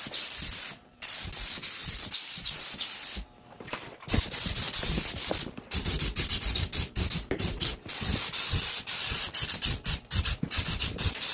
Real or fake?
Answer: fake